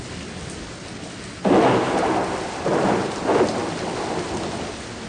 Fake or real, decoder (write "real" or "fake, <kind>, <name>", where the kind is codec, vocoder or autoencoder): real